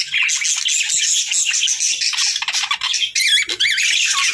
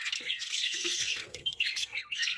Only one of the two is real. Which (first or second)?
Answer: first